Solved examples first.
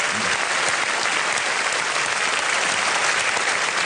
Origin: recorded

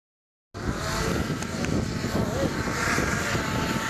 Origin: recorded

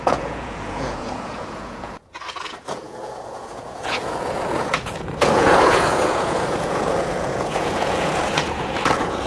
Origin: remade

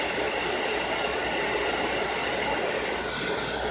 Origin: recorded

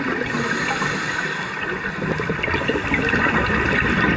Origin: recorded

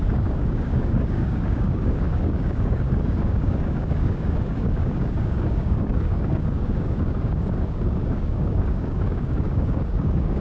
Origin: remade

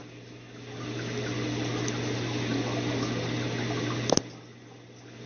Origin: recorded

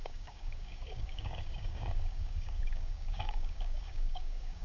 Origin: remade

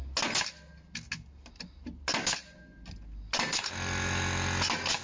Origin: recorded